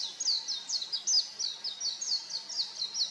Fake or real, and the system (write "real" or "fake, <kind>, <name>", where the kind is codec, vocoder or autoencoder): real